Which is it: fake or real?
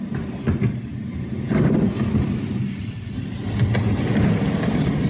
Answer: real